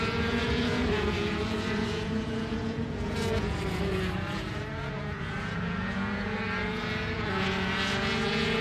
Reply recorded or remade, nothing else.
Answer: remade